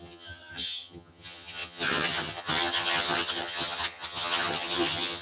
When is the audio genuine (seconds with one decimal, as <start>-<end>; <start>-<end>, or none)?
none